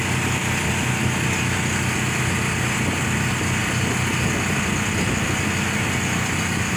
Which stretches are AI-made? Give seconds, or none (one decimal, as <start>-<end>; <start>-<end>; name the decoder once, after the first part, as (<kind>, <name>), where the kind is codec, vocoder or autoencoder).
none